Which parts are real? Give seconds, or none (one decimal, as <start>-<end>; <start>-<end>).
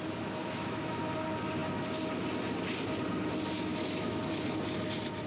0.0-0.4; 1.0-3.7; 4.2-5.3